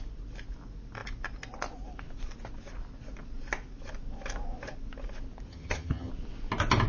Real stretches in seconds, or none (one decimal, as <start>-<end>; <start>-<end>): 0.0-5.5; 6.1-6.9